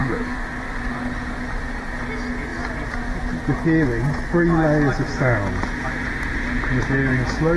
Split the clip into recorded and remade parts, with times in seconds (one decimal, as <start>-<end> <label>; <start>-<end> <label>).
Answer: 0.0-0.8 remade; 0.8-7.6 recorded